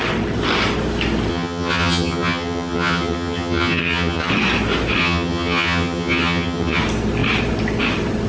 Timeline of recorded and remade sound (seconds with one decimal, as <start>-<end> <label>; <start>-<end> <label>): 0.0-1.3 recorded; 1.3-4.3 remade; 4.3-5.0 recorded; 5.0-6.8 remade; 6.8-8.3 recorded